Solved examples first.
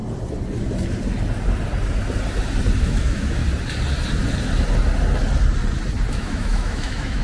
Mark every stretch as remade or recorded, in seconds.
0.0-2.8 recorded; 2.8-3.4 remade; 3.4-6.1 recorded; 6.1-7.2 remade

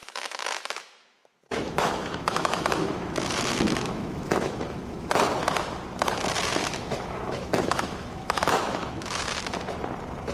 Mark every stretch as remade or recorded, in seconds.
0.0-5.1 remade; 5.1-6.5 recorded; 6.5-9.2 remade; 9.2-10.3 recorded

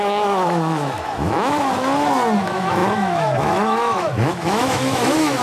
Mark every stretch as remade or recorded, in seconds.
0.0-1.5 remade; 1.5-2.4 recorded; 2.4-5.4 remade

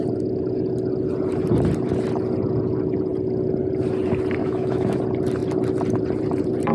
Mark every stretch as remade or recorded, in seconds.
0.0-4.4 recorded; 4.4-5.0 remade; 5.0-6.7 recorded

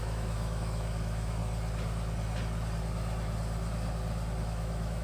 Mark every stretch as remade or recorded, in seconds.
0.0-1.4 remade; 1.4-4.4 recorded; 4.4-5.0 remade

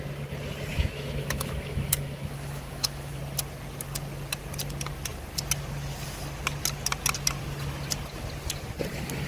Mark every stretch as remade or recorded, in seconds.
0.0-0.7 recorded; 0.7-3.2 remade; 3.2-9.3 recorded

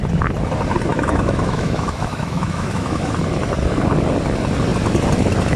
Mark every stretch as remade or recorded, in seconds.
0.0-0.9 recorded; 0.9-3.1 remade; 3.1-5.6 recorded